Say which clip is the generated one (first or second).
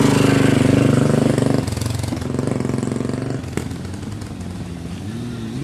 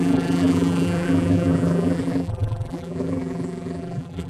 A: second